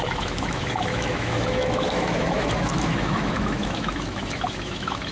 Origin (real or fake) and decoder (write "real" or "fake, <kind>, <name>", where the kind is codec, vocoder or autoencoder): fake, autoencoder, DAC-VAE